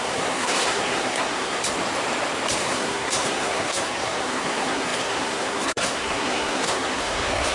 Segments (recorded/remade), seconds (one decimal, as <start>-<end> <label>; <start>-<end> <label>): 0.0-1.6 remade; 1.6-2.6 recorded; 2.6-7.5 remade